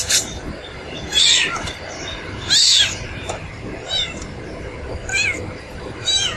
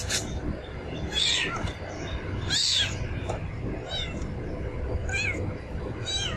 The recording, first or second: second